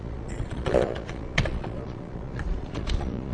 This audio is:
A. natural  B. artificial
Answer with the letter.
B